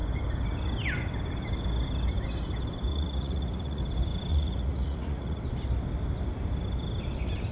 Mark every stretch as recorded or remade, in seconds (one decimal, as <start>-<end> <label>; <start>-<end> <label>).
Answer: 0.0-2.9 recorded; 2.9-3.8 remade; 3.8-4.3 recorded; 4.3-5.4 remade; 5.4-7.5 recorded